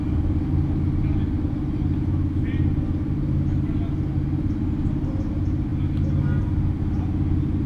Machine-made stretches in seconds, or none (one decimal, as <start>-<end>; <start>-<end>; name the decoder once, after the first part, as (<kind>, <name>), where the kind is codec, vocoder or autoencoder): none